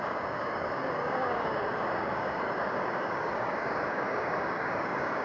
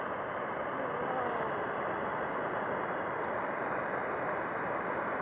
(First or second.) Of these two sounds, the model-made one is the first